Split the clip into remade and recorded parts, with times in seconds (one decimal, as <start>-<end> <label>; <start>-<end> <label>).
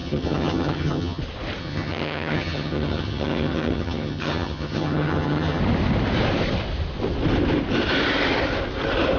0.0-1.2 remade; 1.2-1.6 recorded; 1.6-5.6 remade; 5.6-9.2 recorded